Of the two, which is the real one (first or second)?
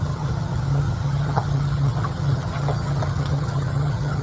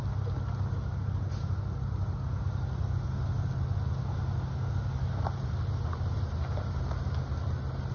second